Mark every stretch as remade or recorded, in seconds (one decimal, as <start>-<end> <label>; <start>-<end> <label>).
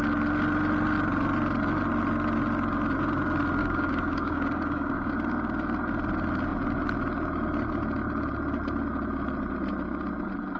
0.0-3.6 recorded; 3.6-5.1 remade; 5.1-10.6 recorded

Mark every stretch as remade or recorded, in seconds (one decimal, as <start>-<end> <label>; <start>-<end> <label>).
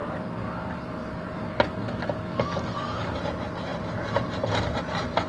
0.0-3.2 remade; 3.2-5.3 recorded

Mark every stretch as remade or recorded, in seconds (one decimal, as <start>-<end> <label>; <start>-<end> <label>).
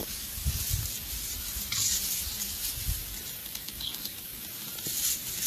0.0-0.5 remade; 0.5-3.4 recorded; 3.4-4.4 remade; 4.4-5.5 recorded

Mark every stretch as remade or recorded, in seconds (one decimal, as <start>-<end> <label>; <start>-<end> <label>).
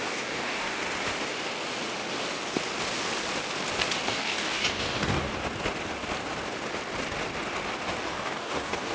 0.0-0.8 remade; 0.8-4.1 recorded; 4.1-5.3 remade; 5.3-8.0 recorded; 8.0-8.9 remade